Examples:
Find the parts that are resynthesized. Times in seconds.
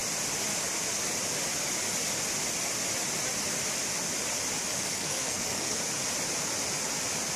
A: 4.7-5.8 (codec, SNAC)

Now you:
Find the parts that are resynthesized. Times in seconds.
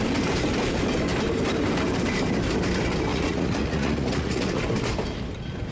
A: 3.1-4.6 (vocoder, Vocos)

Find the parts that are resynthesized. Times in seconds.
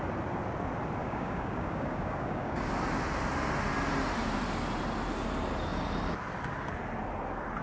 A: 1.0-2.7 (codec, DAC)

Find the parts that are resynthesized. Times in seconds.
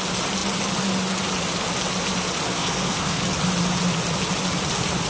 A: 2.5-3.2 (codec, SNAC)